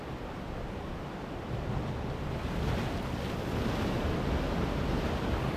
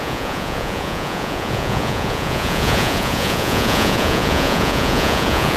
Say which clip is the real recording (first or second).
first